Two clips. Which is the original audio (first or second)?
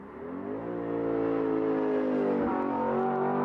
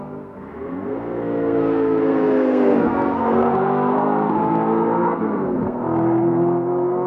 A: first